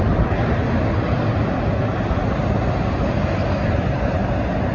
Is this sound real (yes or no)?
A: yes